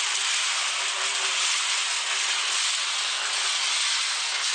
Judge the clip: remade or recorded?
recorded